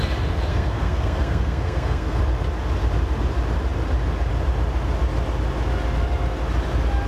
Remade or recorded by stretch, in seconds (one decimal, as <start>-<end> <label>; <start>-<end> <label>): 0.0-0.5 recorded; 0.5-2.2 remade; 2.2-7.1 recorded